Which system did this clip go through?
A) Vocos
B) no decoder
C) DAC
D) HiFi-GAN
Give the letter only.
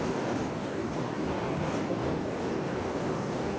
C